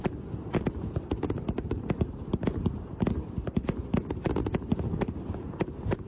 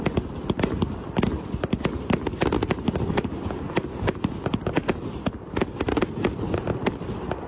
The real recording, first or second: second